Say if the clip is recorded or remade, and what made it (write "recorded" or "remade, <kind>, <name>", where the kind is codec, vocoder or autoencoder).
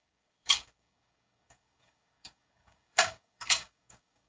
remade, codec, DAC